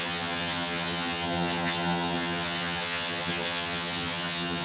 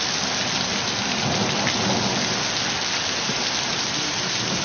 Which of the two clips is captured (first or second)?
second